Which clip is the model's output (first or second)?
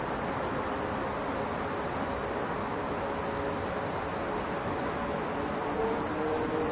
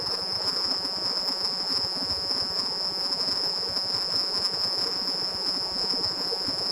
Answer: second